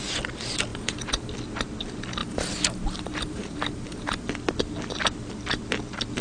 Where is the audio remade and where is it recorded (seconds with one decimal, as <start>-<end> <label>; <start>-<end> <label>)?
0.0-0.7 recorded; 0.7-1.3 remade; 1.3-2.2 recorded; 2.2-4.3 remade; 4.3-6.2 recorded

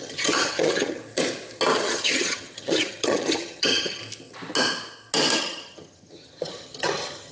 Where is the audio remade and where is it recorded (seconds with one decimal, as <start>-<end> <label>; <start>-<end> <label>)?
0.0-1.0 remade; 1.0-1.8 recorded; 1.8-4.0 remade; 4.0-5.3 recorded; 5.3-7.3 remade

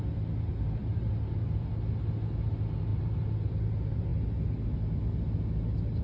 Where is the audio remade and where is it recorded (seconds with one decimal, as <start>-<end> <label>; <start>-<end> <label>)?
0.0-0.8 recorded; 0.8-1.7 remade; 1.7-2.9 recorded; 2.9-3.5 remade; 3.5-6.0 recorded

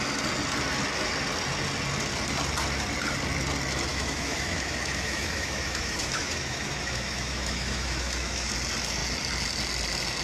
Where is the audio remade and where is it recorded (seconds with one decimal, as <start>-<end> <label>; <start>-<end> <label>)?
0.0-3.9 recorded; 3.9-8.5 remade; 8.5-10.2 recorded

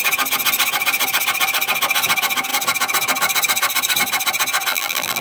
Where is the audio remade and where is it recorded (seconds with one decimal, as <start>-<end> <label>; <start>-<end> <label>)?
0.0-4.7 recorded; 4.7-5.2 remade

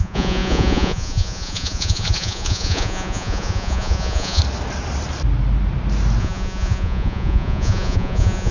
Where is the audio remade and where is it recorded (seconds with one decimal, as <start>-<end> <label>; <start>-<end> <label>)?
0.0-4.4 remade; 4.4-6.2 recorded; 6.2-8.5 remade

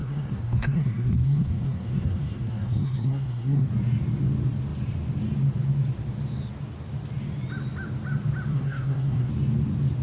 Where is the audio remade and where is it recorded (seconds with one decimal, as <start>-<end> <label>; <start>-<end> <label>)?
0.0-3.7 remade; 3.7-8.5 recorded; 8.5-9.3 remade; 9.3-10.0 recorded

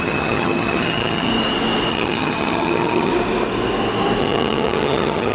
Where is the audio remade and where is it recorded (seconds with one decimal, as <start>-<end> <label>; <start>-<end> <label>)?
0.0-1.3 remade; 1.3-1.9 recorded; 1.9-3.1 remade; 3.1-4.2 recorded; 4.2-5.3 remade